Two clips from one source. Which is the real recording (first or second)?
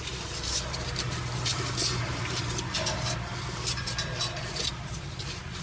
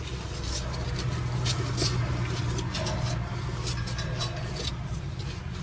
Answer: second